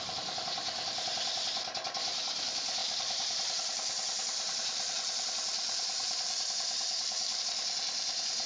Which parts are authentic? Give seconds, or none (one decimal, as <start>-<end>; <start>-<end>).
0.0-2.8; 7.4-8.5